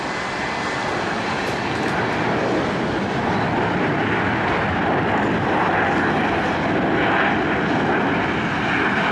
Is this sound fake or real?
real